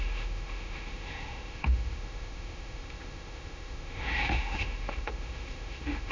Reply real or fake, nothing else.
fake